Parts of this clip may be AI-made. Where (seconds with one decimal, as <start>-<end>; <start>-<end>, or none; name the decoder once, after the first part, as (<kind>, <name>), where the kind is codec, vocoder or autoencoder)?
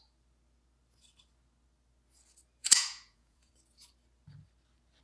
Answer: 2.6-3.5 (vocoder, Vocos)